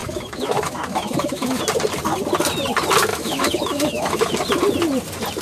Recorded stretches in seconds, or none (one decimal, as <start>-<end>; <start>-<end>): 1.6-3.1; 4.3-5.4